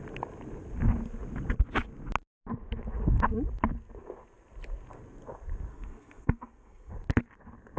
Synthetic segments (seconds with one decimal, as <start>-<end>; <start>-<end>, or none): 5.7-6.9